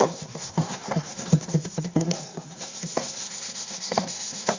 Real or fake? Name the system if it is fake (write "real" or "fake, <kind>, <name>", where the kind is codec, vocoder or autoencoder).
fake, codec, SNAC